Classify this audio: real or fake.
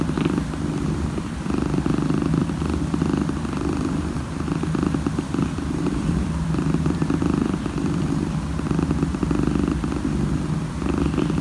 fake